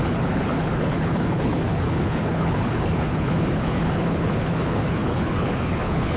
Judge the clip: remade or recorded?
remade